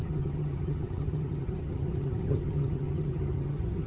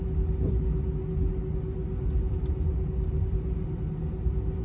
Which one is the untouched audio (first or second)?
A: second